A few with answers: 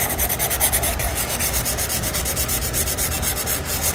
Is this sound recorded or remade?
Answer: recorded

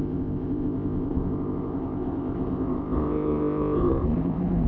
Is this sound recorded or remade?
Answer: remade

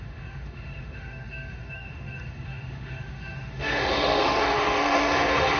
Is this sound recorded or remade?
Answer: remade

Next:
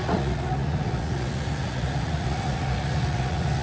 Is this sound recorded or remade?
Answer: remade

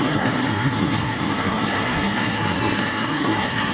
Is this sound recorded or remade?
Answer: remade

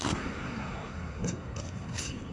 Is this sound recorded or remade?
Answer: remade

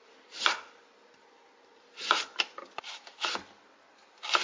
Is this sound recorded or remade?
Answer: remade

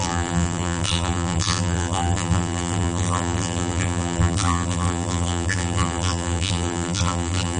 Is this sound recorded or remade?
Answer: remade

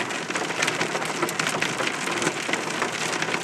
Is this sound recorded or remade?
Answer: recorded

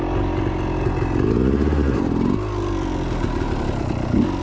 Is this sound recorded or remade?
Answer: recorded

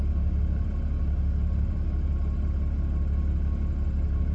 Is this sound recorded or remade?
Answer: recorded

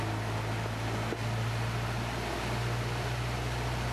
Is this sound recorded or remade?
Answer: recorded